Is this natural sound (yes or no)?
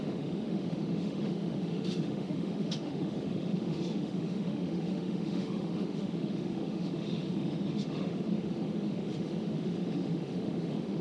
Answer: no